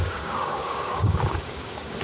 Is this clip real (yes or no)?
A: no